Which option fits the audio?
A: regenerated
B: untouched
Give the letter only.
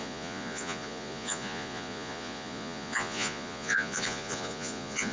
A